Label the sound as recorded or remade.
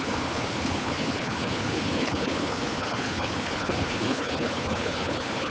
remade